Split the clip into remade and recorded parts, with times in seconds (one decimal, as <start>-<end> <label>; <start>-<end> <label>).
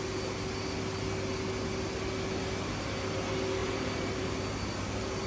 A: 0.0-3.6 recorded; 3.6-4.3 remade; 4.3-5.3 recorded